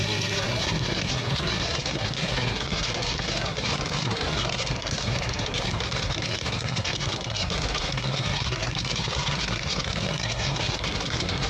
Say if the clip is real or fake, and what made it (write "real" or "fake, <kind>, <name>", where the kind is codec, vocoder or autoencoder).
fake, codec, SNAC